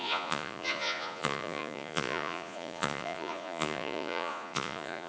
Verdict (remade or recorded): remade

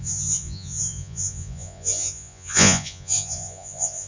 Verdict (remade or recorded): remade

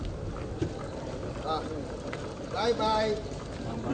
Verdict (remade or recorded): recorded